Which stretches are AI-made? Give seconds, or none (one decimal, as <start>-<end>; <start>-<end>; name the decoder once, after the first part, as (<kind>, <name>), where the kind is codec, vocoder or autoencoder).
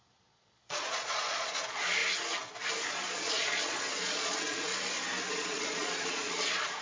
0.0-2.0 (vocoder, Vocos); 2.9-4.7; 5.3-6.8